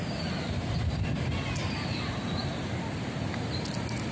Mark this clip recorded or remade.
recorded